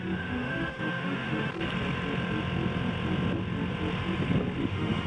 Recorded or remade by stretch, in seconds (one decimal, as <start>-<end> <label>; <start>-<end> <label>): 0.0-1.5 remade; 1.5-4.6 recorded; 4.6-5.1 remade